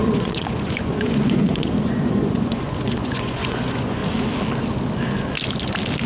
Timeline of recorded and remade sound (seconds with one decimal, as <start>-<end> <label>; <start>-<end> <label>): 0.0-4.0 remade; 4.0-6.1 recorded